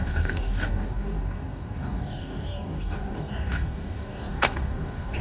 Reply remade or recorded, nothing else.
remade